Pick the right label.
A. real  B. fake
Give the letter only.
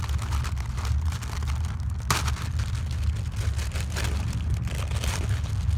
A